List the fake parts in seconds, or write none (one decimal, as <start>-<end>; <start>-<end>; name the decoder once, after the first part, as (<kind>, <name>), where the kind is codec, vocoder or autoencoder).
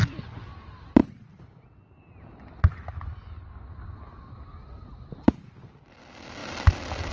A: none